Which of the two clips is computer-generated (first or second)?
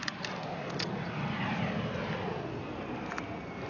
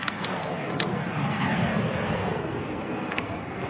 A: second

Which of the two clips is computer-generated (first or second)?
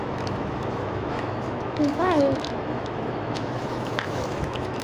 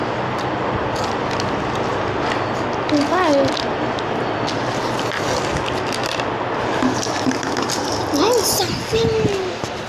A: first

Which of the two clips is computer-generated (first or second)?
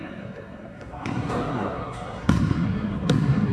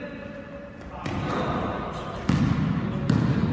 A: first